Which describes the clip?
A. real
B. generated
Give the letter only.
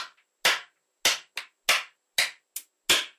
A